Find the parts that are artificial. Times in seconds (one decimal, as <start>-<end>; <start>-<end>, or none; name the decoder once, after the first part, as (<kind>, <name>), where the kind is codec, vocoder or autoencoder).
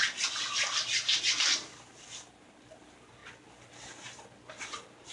none